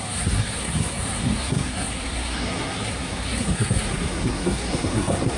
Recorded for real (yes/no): no